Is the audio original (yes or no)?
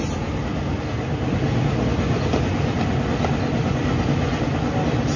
yes